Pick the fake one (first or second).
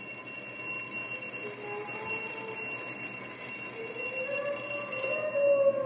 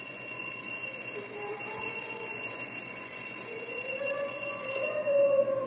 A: second